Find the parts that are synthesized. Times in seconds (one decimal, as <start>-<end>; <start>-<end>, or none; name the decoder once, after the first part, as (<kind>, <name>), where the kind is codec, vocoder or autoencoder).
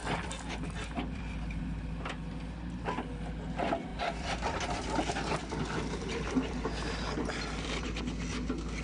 0.0-1.6 (vocoder, BigVGAN v2); 3.9-8.0